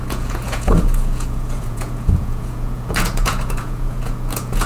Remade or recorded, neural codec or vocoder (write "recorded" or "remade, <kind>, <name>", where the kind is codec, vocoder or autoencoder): remade, vocoder, Vocos